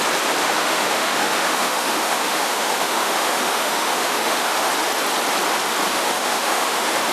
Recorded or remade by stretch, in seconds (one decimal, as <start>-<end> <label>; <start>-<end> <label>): 0.0-0.4 recorded; 0.4-4.7 remade; 4.7-5.9 recorded; 5.9-7.1 remade